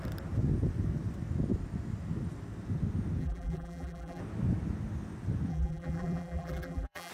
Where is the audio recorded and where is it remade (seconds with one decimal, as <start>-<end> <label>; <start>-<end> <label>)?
0.0-3.2 recorded; 3.2-4.2 remade; 4.2-5.5 recorded; 5.5-7.1 remade